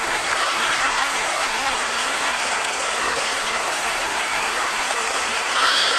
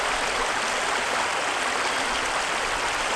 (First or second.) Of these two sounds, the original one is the second